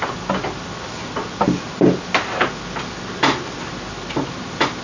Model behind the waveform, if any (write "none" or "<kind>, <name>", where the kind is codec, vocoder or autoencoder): none